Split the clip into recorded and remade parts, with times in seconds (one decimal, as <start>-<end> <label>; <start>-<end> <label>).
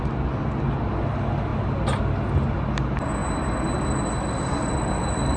0.0-5.4 recorded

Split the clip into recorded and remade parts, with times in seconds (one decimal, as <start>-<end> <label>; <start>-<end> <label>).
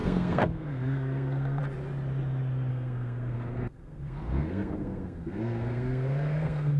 0.0-1.6 remade; 1.6-2.7 recorded; 2.7-6.8 remade